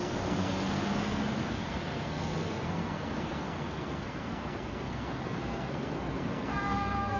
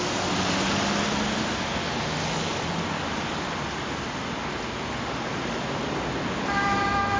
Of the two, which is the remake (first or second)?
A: first